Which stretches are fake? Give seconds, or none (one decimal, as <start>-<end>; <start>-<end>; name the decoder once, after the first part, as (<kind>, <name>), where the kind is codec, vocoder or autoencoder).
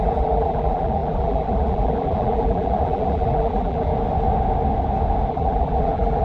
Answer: 0.0-3.9 (vocoder, BigVGAN v2); 5.3-6.2